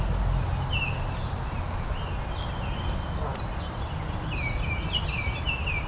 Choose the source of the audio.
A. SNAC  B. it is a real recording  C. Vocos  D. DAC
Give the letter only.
B